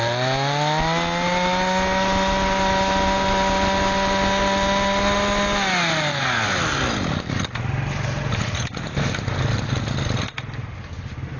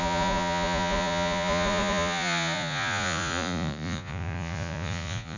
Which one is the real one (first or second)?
first